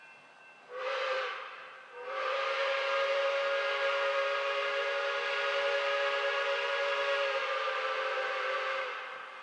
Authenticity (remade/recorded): recorded